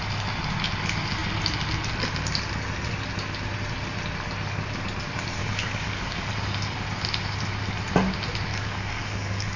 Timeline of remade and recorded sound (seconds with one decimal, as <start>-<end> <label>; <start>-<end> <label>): 0.0-5.4 recorded; 5.4-6.3 remade; 6.3-8.5 recorded; 8.5-9.6 remade